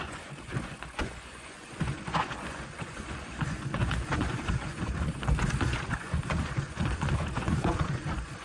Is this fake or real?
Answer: fake